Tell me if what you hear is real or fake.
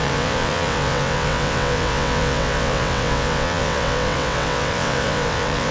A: fake